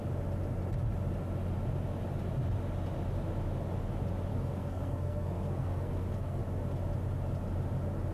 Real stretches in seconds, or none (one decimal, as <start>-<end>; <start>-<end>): 0.0-4.3; 6.4-8.1